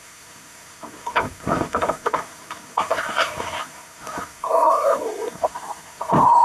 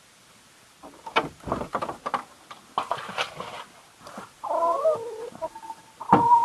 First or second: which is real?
second